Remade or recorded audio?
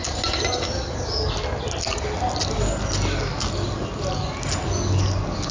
recorded